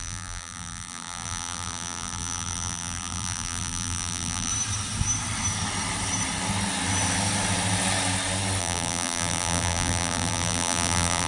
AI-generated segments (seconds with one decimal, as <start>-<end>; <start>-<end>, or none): 0.0-4.5; 8.6-11.3